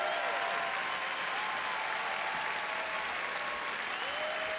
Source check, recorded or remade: recorded